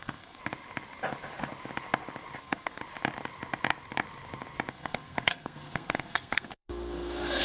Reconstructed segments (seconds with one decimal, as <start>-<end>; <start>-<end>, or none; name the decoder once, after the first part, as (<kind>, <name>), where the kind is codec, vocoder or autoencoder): 0.0-0.4 (codec, SNAC); 2.4-2.8; 4.7-7.4